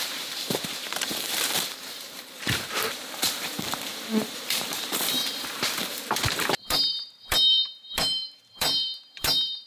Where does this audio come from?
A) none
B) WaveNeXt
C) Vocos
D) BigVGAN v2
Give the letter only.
D